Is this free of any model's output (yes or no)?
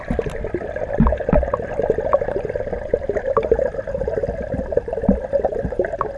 yes